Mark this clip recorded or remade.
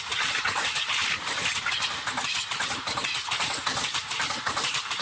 recorded